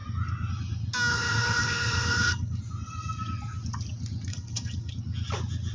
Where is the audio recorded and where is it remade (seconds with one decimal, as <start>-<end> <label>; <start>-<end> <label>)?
0.0-1.1 recorded; 1.1-2.6 remade; 2.6-4.3 recorded; 4.3-4.9 remade; 4.9-5.7 recorded